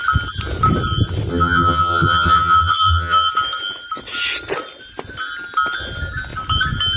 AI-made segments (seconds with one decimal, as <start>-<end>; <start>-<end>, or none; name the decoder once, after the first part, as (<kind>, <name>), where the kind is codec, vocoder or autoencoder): 1.3-3.3 (vocoder, HiFi-GAN)